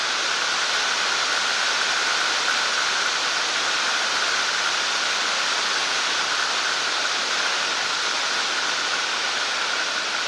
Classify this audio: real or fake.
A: real